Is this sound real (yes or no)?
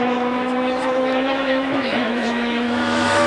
no